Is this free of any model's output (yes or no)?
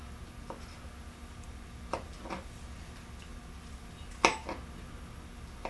yes